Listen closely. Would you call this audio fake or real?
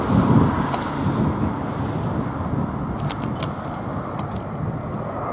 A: real